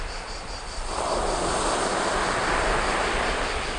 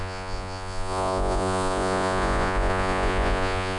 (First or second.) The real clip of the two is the first